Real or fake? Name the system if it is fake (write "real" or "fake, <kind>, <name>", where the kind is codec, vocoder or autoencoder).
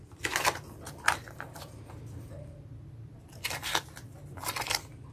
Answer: real